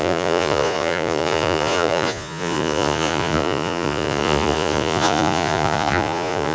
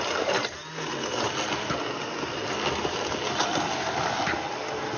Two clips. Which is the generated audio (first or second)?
first